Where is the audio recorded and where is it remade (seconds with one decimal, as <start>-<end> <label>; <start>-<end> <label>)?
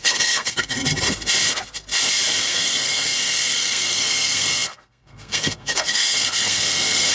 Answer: 0.0-0.8 remade; 0.8-2.4 recorded; 2.4-7.1 remade